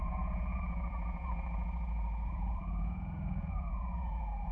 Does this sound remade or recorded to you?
remade